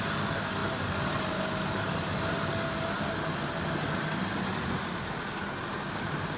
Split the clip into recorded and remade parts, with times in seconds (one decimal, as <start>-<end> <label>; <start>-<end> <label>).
0.0-6.4 recorded